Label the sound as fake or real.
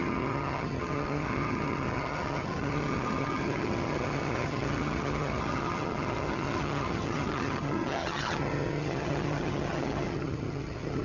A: fake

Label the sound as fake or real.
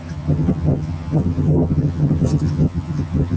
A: fake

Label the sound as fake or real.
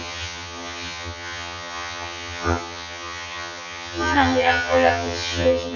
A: fake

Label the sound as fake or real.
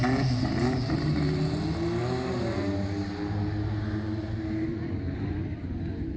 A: real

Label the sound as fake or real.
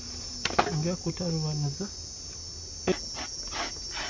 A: real